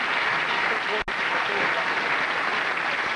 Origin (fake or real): real